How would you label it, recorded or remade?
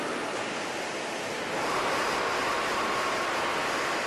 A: remade